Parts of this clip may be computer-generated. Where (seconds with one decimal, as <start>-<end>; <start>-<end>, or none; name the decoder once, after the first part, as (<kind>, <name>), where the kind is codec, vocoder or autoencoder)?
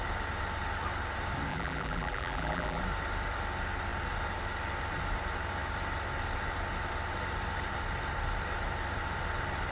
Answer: 1.5-2.8 (vocoder, BigVGAN v2)